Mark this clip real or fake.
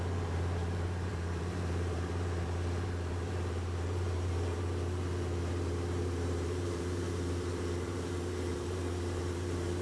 fake